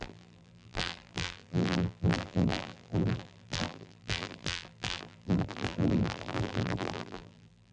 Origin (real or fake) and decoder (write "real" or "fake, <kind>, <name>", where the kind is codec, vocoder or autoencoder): fake, vocoder, BigVGAN v2